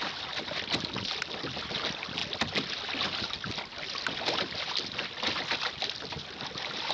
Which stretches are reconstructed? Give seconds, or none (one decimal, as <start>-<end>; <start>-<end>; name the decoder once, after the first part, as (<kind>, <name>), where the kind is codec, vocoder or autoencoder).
none